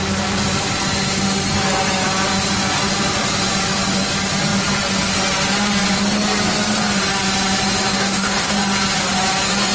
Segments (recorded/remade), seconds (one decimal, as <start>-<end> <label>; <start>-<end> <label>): 0.0-7.9 recorded; 7.9-8.5 remade; 8.5-9.7 recorded

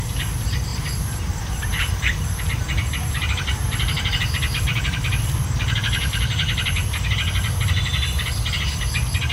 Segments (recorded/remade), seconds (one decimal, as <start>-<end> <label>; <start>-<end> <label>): 0.0-9.3 remade

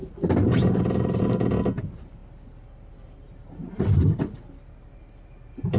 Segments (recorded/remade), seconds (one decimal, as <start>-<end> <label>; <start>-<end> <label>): 0.0-1.3 remade; 1.3-5.8 recorded

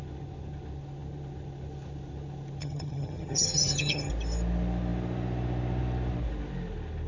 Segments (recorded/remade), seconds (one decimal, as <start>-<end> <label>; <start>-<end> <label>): 0.0-2.6 recorded; 2.6-4.1 remade; 4.1-7.1 recorded

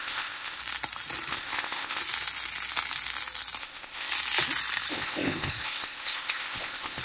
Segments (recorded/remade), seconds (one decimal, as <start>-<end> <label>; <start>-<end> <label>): 0.0-0.6 remade; 0.6-1.3 recorded; 1.3-2.0 remade; 2.0-3.6 recorded; 3.6-4.1 remade; 4.1-4.9 recorded; 4.9-7.0 remade

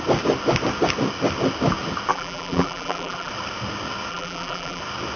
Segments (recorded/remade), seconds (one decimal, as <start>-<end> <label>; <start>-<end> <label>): 0.0-2.1 recorded; 2.1-3.3 remade; 3.3-4.1 recorded; 4.1-4.8 remade; 4.8-5.2 recorded

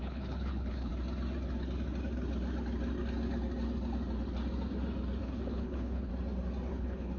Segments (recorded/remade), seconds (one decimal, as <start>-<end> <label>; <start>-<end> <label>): 0.0-0.9 remade; 0.9-5.2 recorded; 5.2-6.1 remade; 6.1-6.7 recorded; 6.7-7.2 remade

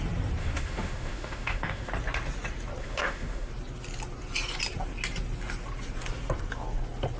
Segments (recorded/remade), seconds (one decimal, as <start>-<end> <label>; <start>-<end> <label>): 0.0-0.4 recorded; 0.4-1.9 remade; 1.9-2.8 recorded; 2.8-3.5 remade; 3.5-7.2 recorded